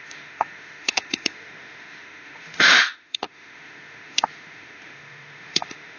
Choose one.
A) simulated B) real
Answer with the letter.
A